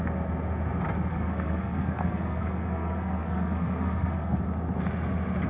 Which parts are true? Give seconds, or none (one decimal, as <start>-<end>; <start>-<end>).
0.0-1.1; 4.4-5.5